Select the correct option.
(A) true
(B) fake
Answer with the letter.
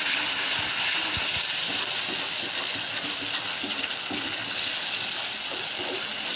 A